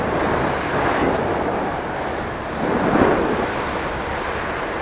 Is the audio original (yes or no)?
yes